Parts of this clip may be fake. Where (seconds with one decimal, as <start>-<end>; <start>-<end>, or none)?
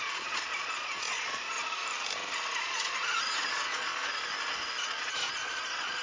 0.0-1.8; 2.6-3.9; 4.8-6.0